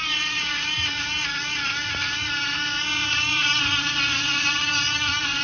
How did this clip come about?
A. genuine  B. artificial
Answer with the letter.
B